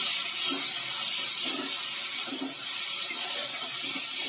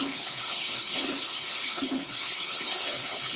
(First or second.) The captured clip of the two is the first